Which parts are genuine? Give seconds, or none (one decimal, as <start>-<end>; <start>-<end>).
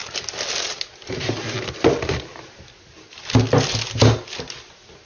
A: 0.0-5.1